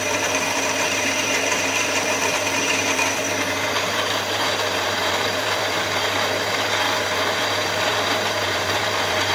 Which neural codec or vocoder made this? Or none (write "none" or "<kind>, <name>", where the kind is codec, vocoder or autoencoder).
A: vocoder, BigVGAN v2